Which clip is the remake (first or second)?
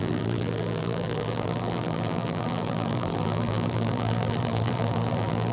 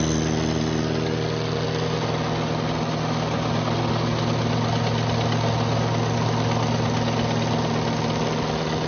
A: first